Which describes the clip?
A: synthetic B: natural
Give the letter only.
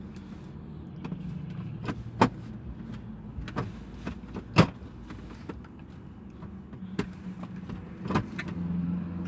B